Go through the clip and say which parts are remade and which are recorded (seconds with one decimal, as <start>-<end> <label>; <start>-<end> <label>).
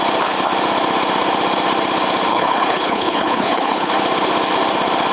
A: 0.0-2.3 recorded; 2.3-3.9 remade; 3.9-5.1 recorded